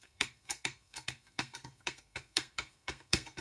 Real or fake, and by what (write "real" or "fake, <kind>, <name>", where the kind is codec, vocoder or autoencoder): fake, codec, SNAC